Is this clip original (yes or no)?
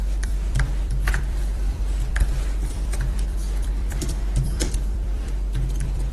no